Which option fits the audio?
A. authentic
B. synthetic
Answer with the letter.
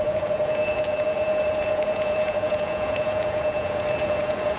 B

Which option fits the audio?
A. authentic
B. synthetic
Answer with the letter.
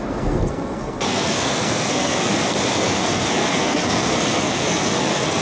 B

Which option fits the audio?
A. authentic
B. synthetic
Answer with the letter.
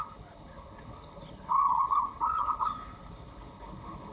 B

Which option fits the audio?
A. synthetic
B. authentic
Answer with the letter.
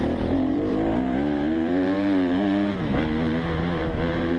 A